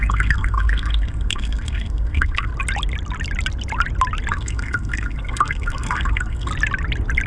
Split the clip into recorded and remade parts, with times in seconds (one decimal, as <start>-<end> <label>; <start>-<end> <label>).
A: 0.0-2.5 remade; 2.5-4.3 recorded; 4.3-6.5 remade; 6.5-7.3 recorded

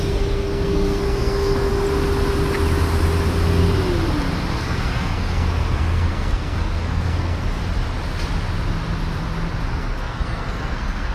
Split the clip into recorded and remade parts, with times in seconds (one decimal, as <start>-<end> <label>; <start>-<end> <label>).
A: 0.0-1.7 remade; 1.7-4.5 recorded; 4.5-7.6 remade; 7.6-9.7 recorded; 9.7-11.1 remade

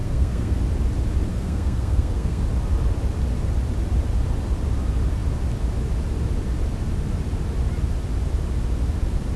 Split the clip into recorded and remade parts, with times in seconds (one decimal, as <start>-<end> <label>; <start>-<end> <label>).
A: 0.0-0.6 remade; 0.6-1.3 recorded; 1.3-2.4 remade; 2.4-9.4 recorded

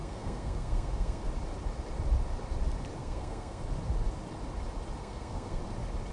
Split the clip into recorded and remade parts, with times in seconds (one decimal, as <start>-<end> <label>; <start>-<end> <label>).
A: 0.0-1.3 remade; 1.3-3.0 recorded; 3.0-3.6 remade; 3.6-5.0 recorded; 5.0-5.6 remade; 5.6-6.1 recorded

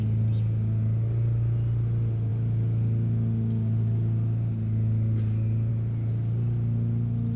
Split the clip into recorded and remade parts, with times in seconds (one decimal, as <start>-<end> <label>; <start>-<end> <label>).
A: 0.0-7.4 recorded

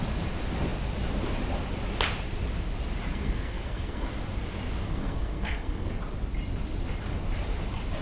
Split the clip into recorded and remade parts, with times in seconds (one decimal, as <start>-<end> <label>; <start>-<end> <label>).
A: 0.0-3.1 recorded; 3.1-4.1 remade; 4.1-4.8 recorded; 4.8-5.9 remade; 5.9-8.0 recorded

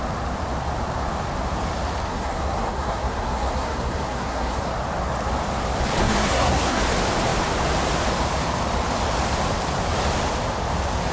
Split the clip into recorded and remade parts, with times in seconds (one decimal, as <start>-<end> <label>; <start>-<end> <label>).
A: 0.0-2.1 recorded; 2.1-4.7 remade; 4.7-6.0 recorded; 6.0-6.8 remade; 6.8-11.1 recorded

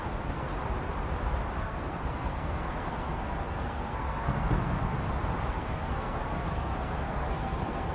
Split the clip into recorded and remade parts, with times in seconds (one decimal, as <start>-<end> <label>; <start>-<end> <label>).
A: 0.0-0.5 remade; 0.5-1.6 recorded; 1.6-4.9 remade; 4.9-5.5 recorded; 5.5-7.9 remade